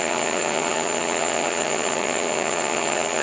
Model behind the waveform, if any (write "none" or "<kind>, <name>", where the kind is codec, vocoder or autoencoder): vocoder, HiFi-GAN